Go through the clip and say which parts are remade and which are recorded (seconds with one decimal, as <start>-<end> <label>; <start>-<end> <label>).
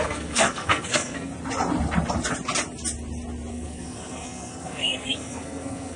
0.0-1.3 remade; 1.3-3.5 recorded; 3.5-6.0 remade